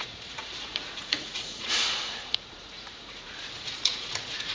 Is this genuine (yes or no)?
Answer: no